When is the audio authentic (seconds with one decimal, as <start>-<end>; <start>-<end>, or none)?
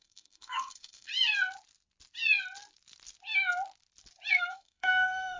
1.1-4.3